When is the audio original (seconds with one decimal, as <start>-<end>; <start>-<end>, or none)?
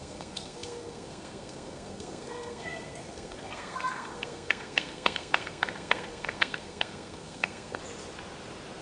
7.8-8.8